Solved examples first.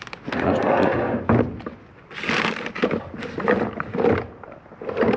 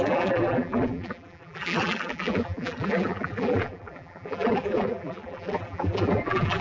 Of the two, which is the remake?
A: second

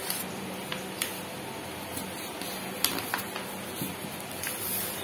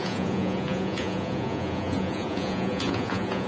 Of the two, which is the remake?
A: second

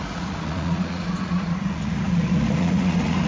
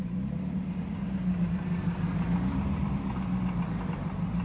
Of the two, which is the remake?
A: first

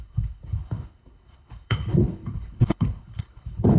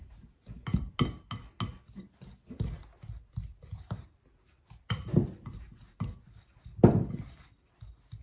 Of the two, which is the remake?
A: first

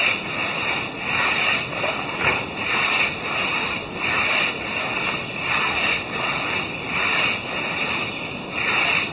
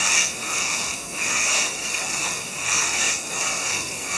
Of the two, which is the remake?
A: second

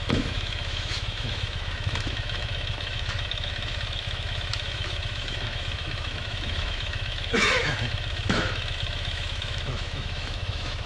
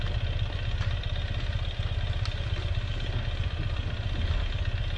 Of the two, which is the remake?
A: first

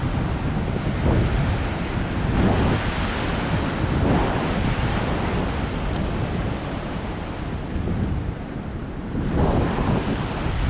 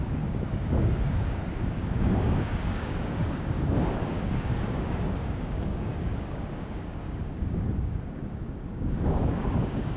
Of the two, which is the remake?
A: second